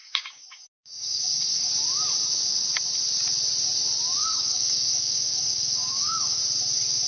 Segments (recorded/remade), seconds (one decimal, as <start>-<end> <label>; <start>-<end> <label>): 0.0-1.7 remade; 1.7-4.2 recorded; 4.2-6.4 remade; 6.4-7.1 recorded